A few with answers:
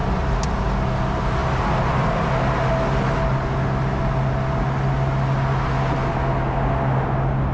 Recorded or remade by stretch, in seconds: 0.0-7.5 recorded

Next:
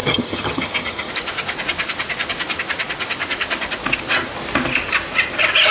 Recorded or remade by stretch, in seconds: 0.0-1.1 remade; 1.1-5.7 recorded

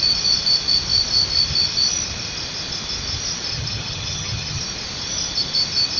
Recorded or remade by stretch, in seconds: 0.0-3.5 recorded; 3.5-4.6 remade; 4.6-6.0 recorded

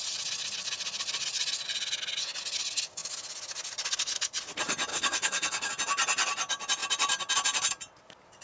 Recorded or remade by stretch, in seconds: 0.0-4.9 recorded; 4.9-5.7 remade; 5.7-8.4 recorded

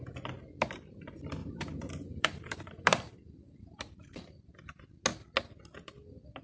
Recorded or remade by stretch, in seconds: 0.0-1.4 recorded; 1.4-4.5 remade; 4.5-6.4 recorded

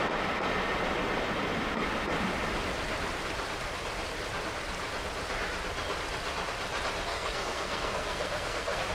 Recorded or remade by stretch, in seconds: 0.0-7.1 recorded; 7.1-8.9 remade

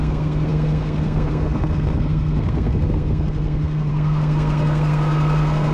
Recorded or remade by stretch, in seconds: 0.0-5.7 remade

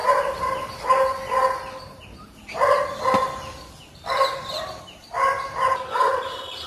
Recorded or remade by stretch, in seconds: 0.0-6.7 recorded